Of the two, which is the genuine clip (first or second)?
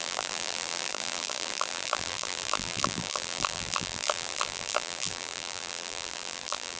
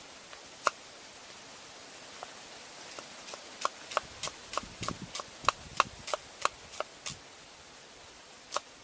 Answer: second